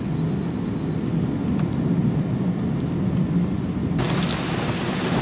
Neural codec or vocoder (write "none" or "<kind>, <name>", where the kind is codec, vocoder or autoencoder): none